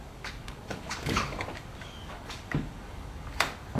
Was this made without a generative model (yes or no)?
no